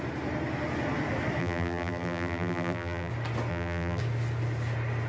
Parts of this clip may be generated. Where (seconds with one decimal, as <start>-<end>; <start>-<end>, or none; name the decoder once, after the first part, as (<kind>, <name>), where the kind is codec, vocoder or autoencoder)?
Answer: 1.4-3.1 (vocoder, BigVGAN v2); 3.5-4.0